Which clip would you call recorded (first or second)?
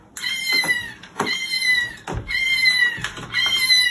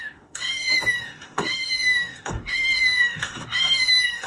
first